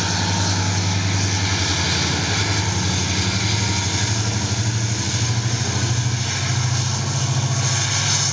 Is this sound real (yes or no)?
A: yes